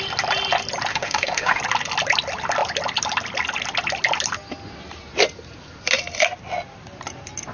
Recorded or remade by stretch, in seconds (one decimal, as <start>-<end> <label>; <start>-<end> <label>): 0.0-0.9 recorded; 0.9-1.6 remade; 1.6-7.5 recorded